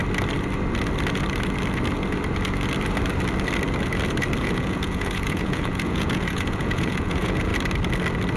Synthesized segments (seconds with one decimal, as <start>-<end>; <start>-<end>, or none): 4.4-7.5